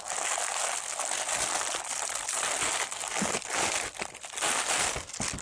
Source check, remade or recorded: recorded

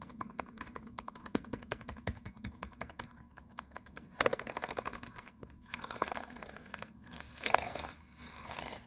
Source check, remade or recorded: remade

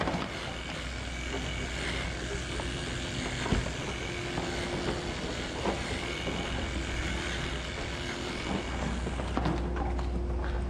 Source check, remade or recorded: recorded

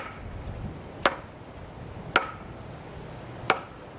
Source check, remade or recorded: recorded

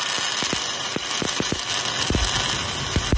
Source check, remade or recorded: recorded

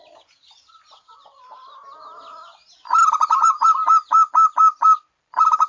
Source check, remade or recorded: recorded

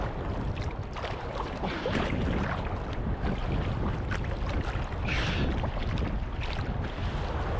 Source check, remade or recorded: recorded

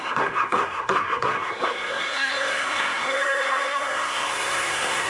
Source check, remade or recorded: remade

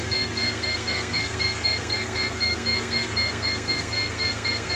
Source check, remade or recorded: remade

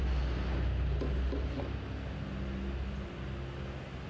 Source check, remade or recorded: recorded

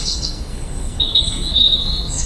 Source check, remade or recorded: remade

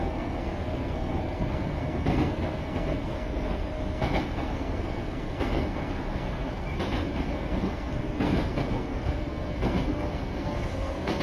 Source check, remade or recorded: remade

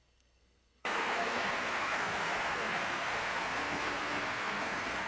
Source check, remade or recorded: remade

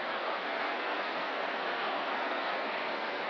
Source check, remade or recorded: remade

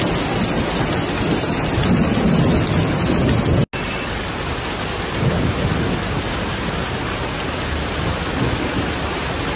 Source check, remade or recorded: recorded